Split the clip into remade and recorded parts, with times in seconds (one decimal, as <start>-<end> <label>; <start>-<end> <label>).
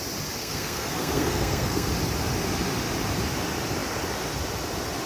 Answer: 0.0-0.4 recorded; 0.4-1.9 remade; 1.9-5.1 recorded